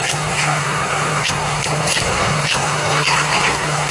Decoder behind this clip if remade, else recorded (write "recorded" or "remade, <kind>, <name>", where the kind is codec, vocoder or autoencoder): remade, codec, SNAC